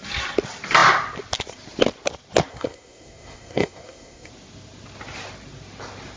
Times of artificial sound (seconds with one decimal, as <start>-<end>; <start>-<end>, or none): 2.5-4.3